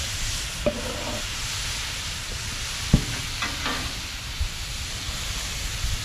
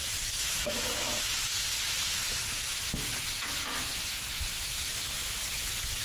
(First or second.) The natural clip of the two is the first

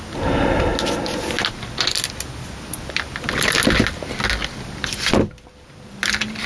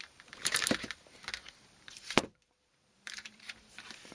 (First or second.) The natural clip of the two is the first